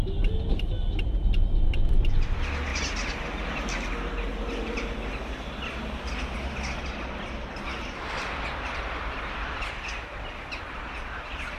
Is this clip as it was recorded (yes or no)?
yes